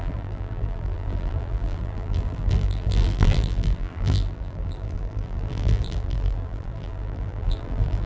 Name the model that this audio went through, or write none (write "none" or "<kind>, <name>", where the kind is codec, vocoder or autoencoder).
vocoder, BigVGAN v2